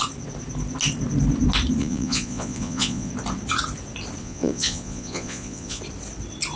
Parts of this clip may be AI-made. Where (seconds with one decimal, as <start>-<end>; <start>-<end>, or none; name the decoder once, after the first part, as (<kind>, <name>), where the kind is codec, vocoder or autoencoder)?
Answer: 1.8-3.1 (vocoder, Vocos); 4.2-5.8